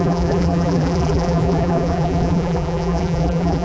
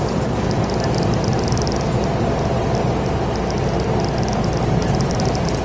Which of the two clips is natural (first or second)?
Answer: second